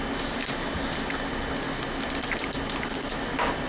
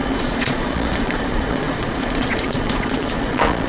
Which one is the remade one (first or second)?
second